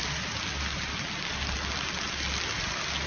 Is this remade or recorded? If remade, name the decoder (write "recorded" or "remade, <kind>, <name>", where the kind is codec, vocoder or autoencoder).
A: recorded